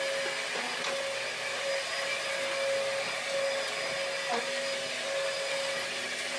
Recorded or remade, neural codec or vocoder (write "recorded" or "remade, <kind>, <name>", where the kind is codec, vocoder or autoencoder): recorded